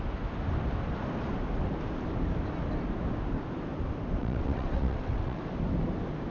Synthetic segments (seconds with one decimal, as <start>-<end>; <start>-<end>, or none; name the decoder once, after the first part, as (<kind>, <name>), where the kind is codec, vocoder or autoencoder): 4.2-5.4 (vocoder, WaveNeXt)